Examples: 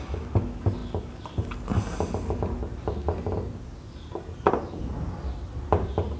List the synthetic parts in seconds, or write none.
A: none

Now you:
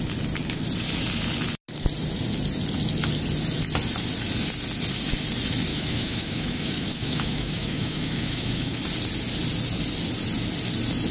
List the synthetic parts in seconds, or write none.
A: 5.7-8.8

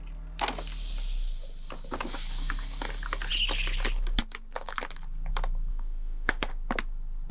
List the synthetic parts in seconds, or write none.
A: 5.7-6.5

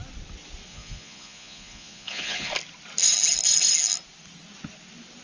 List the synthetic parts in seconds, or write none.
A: 0.7-2.5

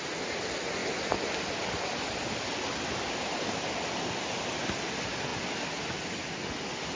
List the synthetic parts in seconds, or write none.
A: none

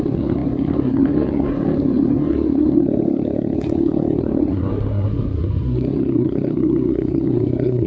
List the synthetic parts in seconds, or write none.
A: 0.0-7.9

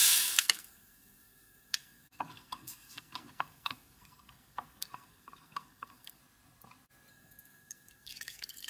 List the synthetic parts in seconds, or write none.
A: 0.0-6.2; 7.1-8.7